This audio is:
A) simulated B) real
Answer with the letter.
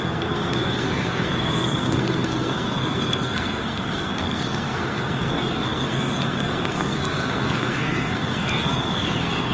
A